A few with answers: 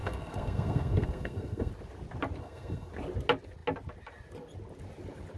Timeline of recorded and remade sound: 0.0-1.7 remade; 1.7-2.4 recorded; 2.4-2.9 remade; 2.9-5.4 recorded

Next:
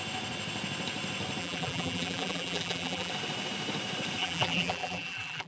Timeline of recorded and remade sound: 0.0-1.4 recorded; 1.4-3.1 remade; 3.1-4.2 recorded; 4.2-5.5 remade

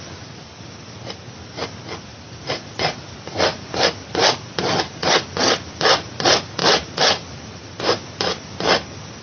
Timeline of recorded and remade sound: 0.0-9.2 remade

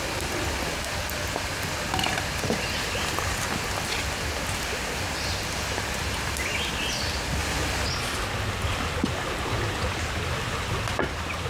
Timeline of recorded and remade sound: 0.0-11.5 recorded

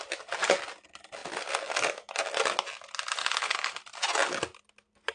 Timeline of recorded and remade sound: 0.0-3.2 recorded; 3.2-3.8 remade; 3.8-5.1 recorded

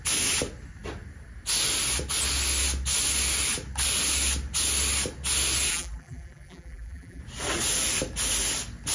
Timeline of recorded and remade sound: 0.0-5.7 recorded; 5.7-7.2 remade; 7.2-8.9 recorded

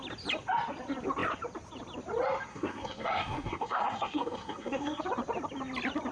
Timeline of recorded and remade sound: 0.0-2.5 recorded; 2.5-5.0 remade; 5.0-6.1 recorded

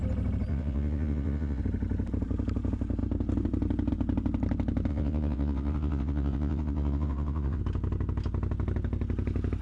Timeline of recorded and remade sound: 0.0-0.5 recorded; 0.5-1.6 remade; 1.6-4.9 recorded; 4.9-7.6 remade; 7.6-9.6 recorded